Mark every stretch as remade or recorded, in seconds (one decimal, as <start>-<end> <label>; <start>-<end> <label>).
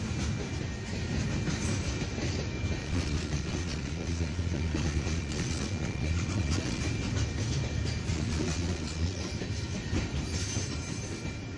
0.0-2.8 recorded; 2.8-6.8 remade; 6.8-8.1 recorded; 8.1-9.2 remade; 9.2-11.6 recorded